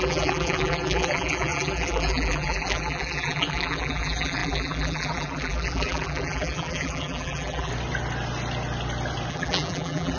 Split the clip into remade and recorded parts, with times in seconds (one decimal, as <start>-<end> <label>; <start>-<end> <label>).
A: 0.0-7.7 remade; 7.7-9.3 recorded; 9.3-10.2 remade